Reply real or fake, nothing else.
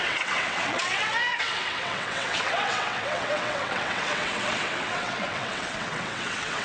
fake